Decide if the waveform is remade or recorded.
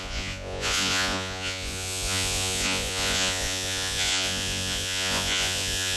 remade